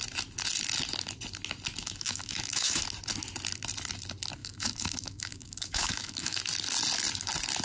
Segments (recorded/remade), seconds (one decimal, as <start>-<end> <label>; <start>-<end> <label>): 0.0-1.8 recorded; 1.8-2.8 remade; 2.8-4.4 recorded; 4.4-6.4 remade; 6.4-7.6 recorded